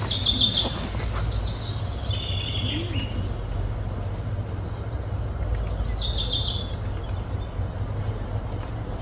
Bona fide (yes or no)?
yes